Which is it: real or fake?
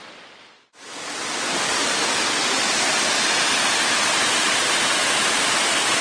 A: real